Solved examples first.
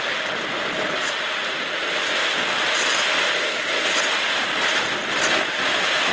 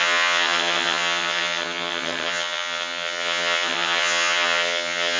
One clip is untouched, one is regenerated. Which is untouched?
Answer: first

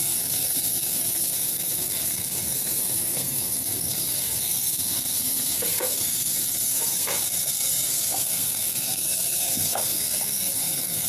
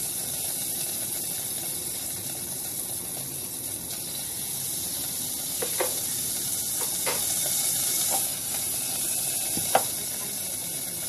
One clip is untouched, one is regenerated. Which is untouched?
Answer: second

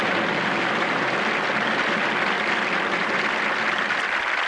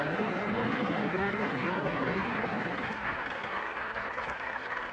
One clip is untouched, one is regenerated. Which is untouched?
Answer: first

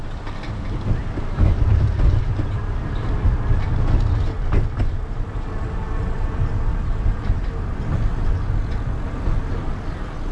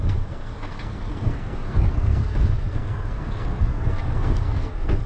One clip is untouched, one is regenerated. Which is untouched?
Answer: first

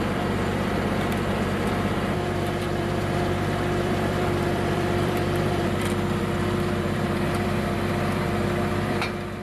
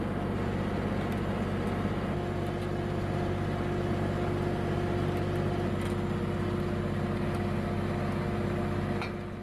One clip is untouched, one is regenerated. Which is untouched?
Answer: second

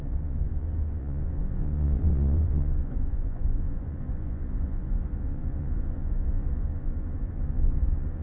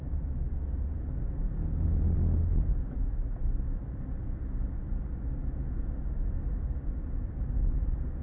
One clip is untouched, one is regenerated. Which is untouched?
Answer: second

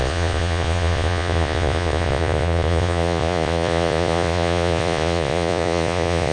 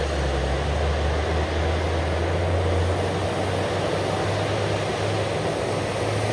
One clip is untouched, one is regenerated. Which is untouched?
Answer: second